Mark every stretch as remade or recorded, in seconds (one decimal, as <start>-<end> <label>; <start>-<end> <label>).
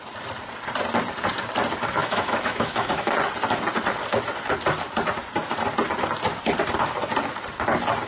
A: 0.0-2.0 recorded; 2.0-3.1 remade; 3.1-8.1 recorded